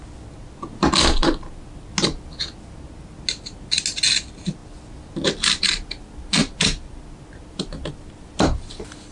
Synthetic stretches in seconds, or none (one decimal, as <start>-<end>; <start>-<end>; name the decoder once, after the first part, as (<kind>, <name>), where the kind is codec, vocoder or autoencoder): none